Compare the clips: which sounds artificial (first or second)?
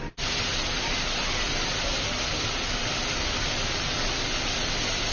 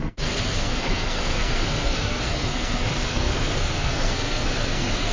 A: second